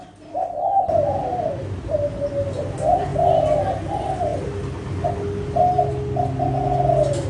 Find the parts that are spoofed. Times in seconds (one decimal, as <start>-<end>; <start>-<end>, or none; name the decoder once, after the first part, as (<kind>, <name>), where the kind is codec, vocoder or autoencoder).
none

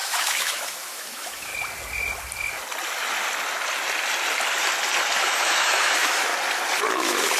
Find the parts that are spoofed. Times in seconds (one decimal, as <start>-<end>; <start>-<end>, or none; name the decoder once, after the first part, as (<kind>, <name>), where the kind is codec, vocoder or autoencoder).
0.0-1.5 (autoencoder, DAC-VAE); 5.2-6.3; 6.9-7.4